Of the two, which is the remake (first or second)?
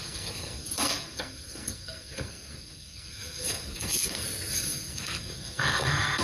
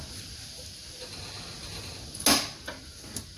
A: first